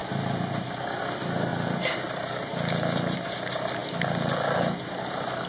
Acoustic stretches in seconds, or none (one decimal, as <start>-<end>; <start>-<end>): 0.0-5.5

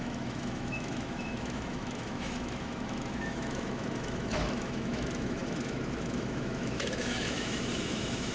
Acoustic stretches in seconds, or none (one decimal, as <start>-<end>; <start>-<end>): none